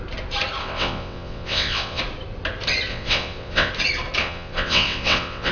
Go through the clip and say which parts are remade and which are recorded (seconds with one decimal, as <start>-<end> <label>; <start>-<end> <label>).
0.0-0.6 recorded; 0.6-2.0 remade; 2.0-2.9 recorded; 2.9-3.7 remade; 3.7-4.2 recorded; 4.2-5.5 remade